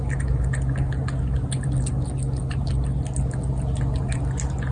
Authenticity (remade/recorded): recorded